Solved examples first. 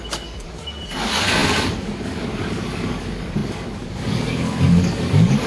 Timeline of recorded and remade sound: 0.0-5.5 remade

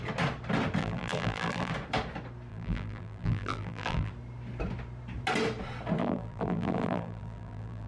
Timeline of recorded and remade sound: 0.0-0.8 recorded; 0.8-1.7 remade; 1.7-2.5 recorded; 2.5-4.1 remade; 4.1-6.0 recorded; 6.0-7.9 remade

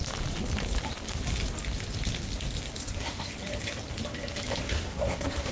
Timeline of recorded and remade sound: 0.0-2.8 recorded; 2.8-3.3 remade; 3.3-4.6 recorded; 4.6-5.5 remade

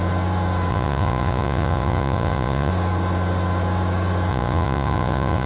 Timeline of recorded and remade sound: 0.0-0.7 recorded; 0.7-2.7 remade; 2.7-4.3 recorded; 4.3-5.5 remade

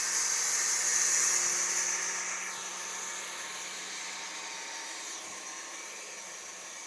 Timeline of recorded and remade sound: 0.0-6.9 recorded

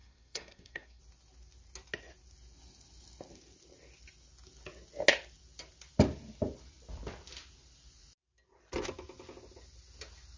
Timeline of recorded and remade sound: 0.0-1.0 remade; 1.0-10.4 recorded

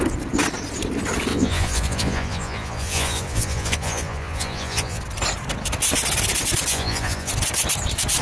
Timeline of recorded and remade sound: 0.0-1.3 recorded; 1.3-5.0 remade; 5.0-6.7 recorded; 6.7-7.3 remade; 7.3-8.2 recorded

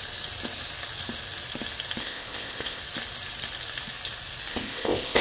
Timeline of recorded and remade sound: 0.0-2.0 recorded; 2.0-2.8 remade; 2.8-4.5 recorded; 4.5-5.2 remade